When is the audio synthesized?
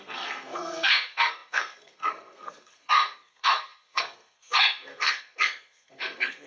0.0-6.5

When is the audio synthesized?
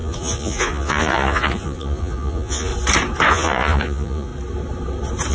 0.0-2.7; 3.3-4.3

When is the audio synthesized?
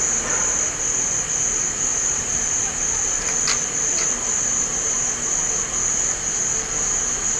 1.9-2.6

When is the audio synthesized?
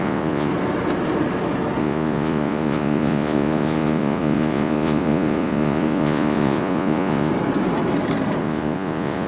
0.0-0.5; 1.8-7.3; 8.4-9.3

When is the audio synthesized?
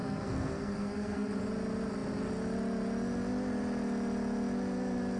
0.0-1.4